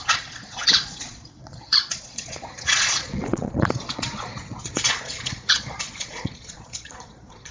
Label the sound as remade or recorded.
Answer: remade